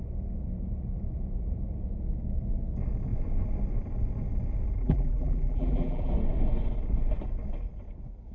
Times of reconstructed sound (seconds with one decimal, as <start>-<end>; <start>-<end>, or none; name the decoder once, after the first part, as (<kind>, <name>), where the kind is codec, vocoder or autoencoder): 4.8-6.1 (vocoder, BigVGAN v2)